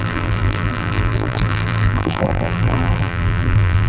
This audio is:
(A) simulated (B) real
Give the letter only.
A